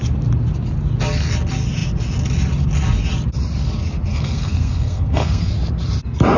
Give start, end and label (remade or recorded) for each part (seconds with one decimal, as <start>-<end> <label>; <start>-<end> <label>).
0.0-4.1 recorded; 4.1-5.5 remade; 5.5-6.4 recorded